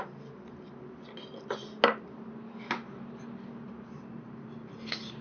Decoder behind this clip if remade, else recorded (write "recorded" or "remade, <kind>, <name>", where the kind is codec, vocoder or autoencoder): recorded